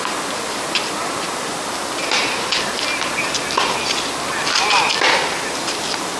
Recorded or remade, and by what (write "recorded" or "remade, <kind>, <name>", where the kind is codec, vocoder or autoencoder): recorded